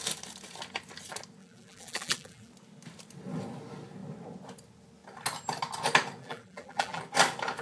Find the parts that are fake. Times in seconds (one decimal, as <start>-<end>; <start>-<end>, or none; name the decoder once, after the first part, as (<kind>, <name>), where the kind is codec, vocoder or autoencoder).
1.4-2.5 (vocoder, BigVGAN v2); 6.2-7.0

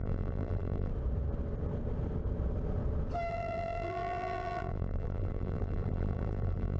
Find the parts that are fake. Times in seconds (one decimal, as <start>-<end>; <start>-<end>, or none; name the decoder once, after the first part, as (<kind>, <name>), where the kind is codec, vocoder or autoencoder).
0.0-0.9 (vocoder, BigVGAN v2); 3.3-6.8

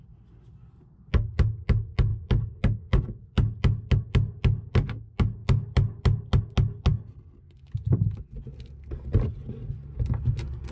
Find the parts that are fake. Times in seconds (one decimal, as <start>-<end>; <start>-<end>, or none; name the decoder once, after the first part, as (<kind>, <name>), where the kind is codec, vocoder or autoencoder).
none

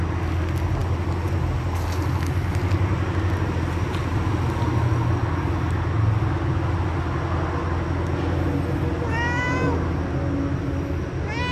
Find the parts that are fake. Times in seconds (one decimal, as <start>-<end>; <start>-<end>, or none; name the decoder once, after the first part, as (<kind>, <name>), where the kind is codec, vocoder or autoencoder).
none

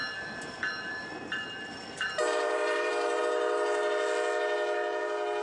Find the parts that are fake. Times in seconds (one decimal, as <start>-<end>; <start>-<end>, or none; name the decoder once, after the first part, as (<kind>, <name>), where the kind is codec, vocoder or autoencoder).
0.0-3.2 (vocoder, BigVGAN v2)

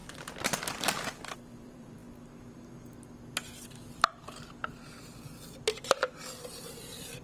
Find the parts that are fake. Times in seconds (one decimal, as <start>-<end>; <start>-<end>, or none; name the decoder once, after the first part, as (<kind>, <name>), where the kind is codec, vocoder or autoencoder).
0.0-2.0 (vocoder, BigVGAN v2); 6.3-7.2

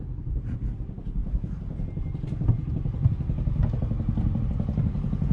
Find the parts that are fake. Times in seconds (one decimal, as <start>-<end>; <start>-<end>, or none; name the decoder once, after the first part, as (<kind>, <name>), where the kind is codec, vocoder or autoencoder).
0.0-1.2 (vocoder, BigVGAN v2); 4.4-5.3

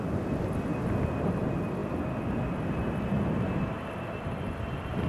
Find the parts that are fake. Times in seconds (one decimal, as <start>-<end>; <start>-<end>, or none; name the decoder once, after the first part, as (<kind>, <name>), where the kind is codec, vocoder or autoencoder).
0.7-1.3 (vocoder, BigVGAN v2); 3.1-3.9